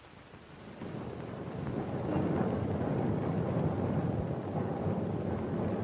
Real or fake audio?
real